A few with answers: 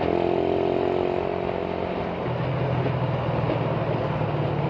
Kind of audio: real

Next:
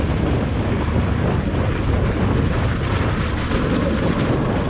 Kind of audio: real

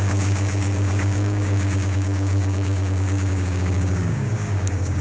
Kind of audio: fake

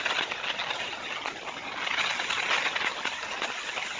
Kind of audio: real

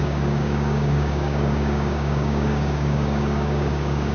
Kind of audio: fake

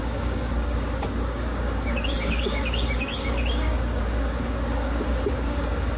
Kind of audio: fake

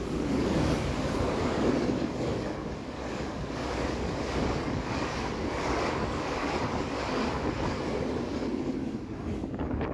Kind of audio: fake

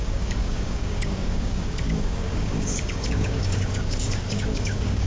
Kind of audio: fake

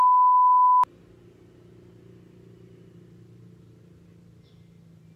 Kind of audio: real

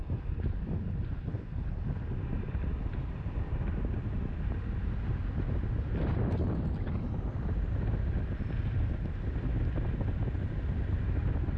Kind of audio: real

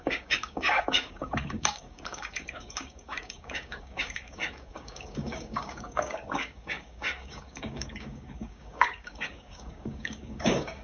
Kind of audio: fake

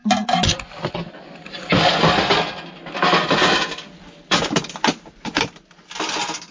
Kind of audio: real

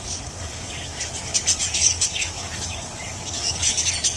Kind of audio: fake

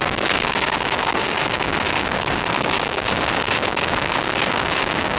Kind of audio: fake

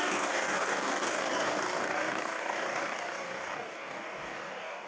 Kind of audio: fake